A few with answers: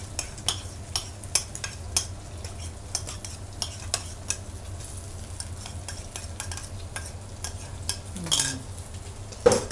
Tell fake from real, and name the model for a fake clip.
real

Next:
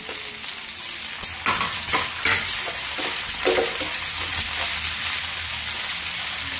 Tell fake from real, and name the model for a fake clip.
real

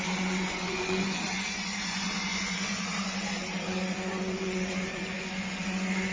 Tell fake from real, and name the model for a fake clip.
fake, vocoder, Vocos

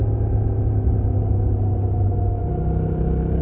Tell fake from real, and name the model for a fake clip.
real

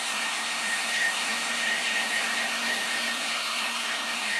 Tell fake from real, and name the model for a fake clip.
fake, codec, SNAC